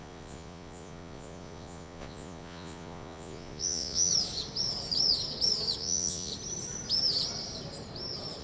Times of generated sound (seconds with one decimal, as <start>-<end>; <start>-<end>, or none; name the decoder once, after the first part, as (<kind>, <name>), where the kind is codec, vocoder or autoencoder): 0.0-4.1 (vocoder, Vocos); 5.8-6.3